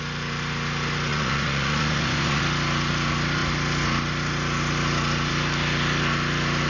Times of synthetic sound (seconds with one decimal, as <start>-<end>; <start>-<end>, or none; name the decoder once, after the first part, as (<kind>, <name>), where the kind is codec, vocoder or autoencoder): 1.1-2.4 (vocoder, Vocos)

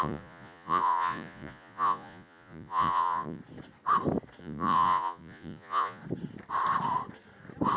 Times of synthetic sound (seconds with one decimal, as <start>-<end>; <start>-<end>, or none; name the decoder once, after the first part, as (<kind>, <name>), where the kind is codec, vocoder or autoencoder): 0.0-3.4 (vocoder, Vocos); 4.4-6.0

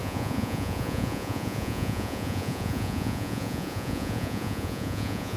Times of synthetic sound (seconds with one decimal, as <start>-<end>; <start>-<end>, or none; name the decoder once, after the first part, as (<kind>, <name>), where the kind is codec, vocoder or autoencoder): 0.0-5.4 (vocoder, Vocos)

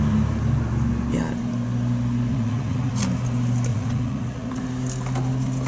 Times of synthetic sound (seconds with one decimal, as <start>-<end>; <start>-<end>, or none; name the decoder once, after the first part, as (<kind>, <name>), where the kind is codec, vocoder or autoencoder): 2.3-2.9 (vocoder, Vocos); 3.7-4.6

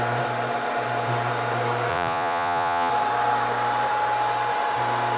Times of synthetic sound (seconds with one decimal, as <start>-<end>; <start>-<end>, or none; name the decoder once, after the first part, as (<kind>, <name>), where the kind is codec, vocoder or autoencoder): 1.9-2.9 (vocoder, Vocos)